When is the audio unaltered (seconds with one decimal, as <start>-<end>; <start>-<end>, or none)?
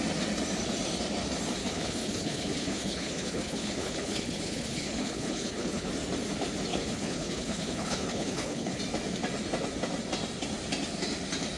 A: 0.0-1.6; 5.9-6.7; 8.8-11.6